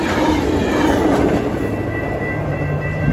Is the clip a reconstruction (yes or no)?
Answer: yes